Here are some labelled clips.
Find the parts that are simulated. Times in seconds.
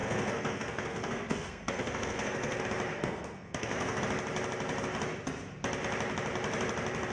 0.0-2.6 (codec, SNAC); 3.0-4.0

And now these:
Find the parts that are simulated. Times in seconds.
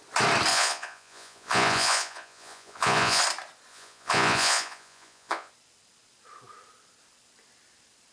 0.5-3.2 (vocoder, Vocos); 3.7-5.5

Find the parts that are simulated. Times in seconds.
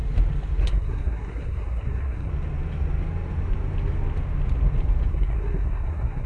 0.6-2.3 (codec, SNAC); 5.1-6.3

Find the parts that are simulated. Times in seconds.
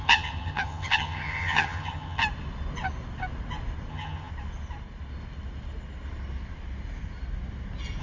0.0-2.2 (vocoder, HiFi-GAN); 3.9-4.3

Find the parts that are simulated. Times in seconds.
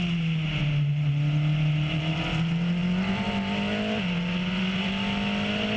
none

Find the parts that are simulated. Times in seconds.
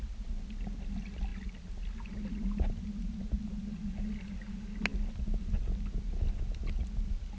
none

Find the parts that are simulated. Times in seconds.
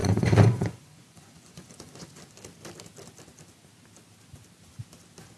0.0-2.2 (vocoder, Vocos)